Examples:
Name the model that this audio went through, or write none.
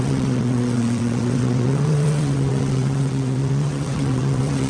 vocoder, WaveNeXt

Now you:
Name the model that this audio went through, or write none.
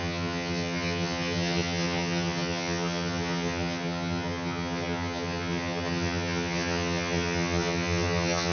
vocoder, HiFi-GAN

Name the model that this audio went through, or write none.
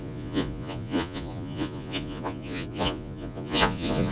vocoder, Vocos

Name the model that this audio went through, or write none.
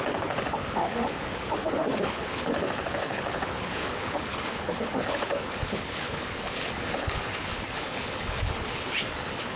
codec, HILCodec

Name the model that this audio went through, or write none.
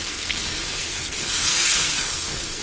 codec, SNAC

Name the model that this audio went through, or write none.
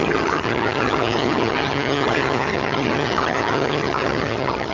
vocoder, HiFi-GAN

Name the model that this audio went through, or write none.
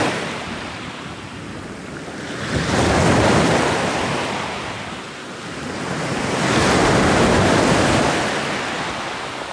none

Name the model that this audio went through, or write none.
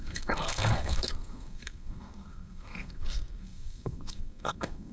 codec, SNAC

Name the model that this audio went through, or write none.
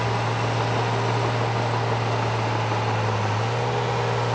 none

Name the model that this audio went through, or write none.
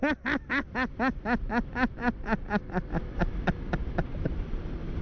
none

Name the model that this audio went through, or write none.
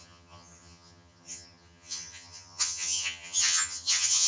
vocoder, HiFi-GAN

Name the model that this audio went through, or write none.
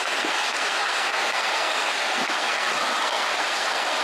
codec, SNAC